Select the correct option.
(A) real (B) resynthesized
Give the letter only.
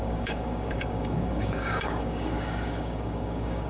B